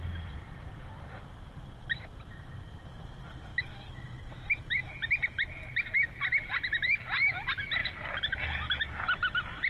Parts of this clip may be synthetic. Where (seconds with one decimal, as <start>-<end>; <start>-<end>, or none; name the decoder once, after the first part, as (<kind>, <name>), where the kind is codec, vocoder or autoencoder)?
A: 0.0-3.5 (vocoder, BigVGAN v2); 6.5-7.8; 8.8-9.7